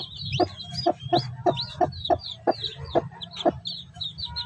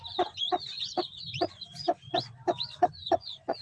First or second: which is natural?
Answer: first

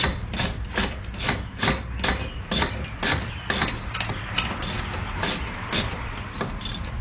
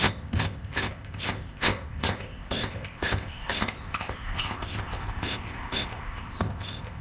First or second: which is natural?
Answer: first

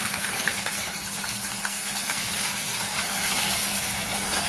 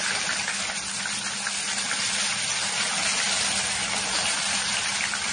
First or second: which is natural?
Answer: second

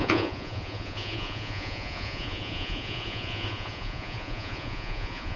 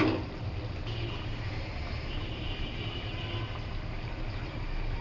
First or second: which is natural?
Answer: second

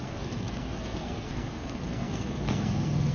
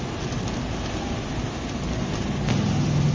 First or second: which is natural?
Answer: second